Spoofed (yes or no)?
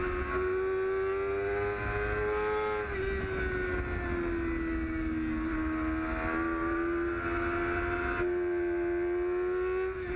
no